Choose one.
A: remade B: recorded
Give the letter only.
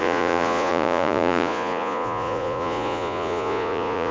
A